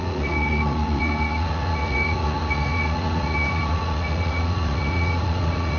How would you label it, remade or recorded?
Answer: remade